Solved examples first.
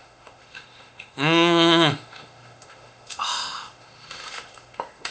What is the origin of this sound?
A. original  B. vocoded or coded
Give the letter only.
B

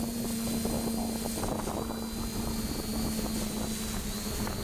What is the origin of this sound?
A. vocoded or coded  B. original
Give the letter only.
B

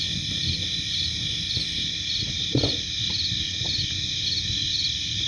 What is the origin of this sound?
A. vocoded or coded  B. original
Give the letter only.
B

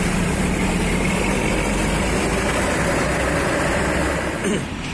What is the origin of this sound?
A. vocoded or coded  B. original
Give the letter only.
A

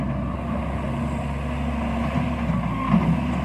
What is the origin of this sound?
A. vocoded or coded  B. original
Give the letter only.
B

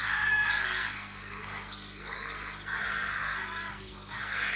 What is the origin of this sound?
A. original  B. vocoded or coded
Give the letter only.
B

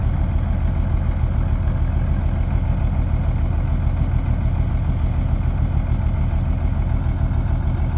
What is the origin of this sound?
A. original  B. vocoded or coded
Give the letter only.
A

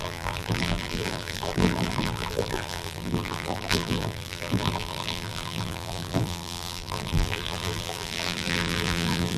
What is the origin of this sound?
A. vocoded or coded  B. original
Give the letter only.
A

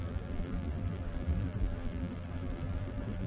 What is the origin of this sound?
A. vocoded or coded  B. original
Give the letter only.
A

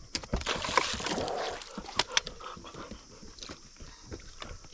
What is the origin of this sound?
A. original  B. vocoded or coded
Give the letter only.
A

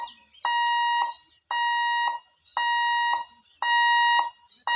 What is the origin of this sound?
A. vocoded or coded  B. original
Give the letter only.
B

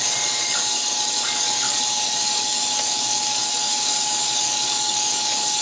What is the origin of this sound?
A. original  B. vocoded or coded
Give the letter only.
B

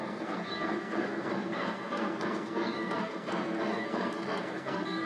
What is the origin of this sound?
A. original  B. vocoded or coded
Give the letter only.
B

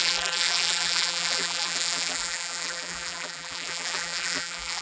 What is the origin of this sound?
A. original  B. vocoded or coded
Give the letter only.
B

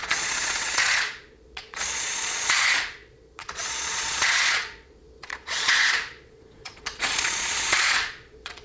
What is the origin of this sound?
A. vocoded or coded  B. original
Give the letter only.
A